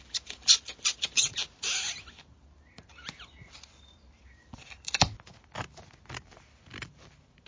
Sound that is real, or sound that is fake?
real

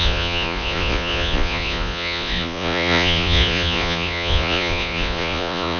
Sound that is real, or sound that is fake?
fake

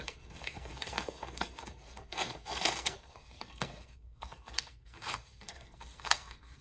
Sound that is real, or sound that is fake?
fake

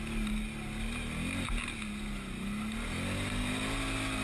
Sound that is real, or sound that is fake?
real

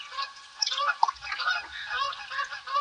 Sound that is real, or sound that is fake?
fake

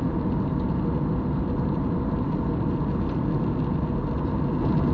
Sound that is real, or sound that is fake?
real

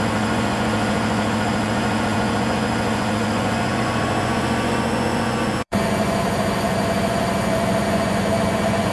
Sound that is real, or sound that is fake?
fake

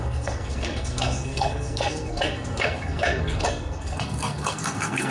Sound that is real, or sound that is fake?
fake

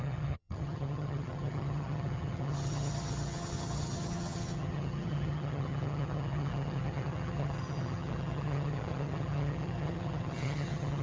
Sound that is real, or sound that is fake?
fake